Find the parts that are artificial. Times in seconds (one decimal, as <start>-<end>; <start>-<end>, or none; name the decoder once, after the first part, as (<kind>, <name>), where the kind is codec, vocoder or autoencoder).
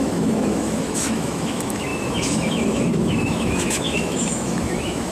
0.0-5.1 (autoencoder, DAC-VAE)